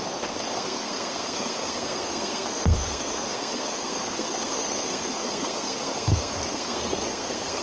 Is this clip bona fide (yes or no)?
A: no